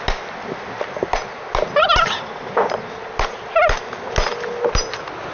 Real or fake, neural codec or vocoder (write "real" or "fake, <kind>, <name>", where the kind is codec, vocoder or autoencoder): real